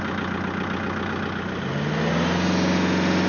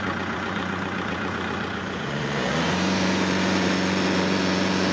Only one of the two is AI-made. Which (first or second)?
second